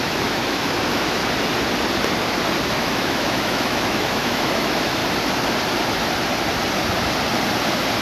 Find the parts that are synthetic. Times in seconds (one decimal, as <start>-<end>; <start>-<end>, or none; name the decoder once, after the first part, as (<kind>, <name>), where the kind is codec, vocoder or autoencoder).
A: 0.0-1.2 (autoencoder, DAC-VAE); 2.7-5.0